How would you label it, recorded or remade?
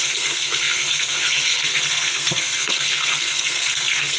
remade